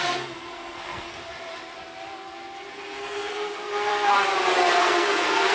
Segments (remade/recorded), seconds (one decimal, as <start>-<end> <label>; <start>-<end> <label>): 0.0-1.2 remade; 1.2-2.7 recorded; 2.7-4.3 remade; 4.3-4.8 recorded; 4.8-5.5 remade